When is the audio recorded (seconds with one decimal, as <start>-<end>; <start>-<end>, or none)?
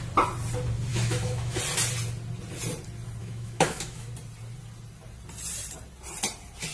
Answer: 0.0-0.9; 1.6-3.2; 4.1-6.7